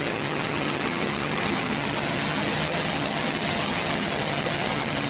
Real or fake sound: fake